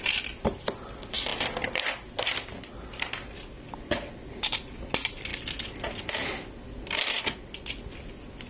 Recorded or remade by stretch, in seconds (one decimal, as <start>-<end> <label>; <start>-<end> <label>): 0.0-8.5 recorded